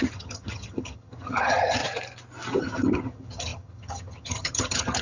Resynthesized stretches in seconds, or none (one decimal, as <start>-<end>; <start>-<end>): 0.0-1.8; 2.6-5.0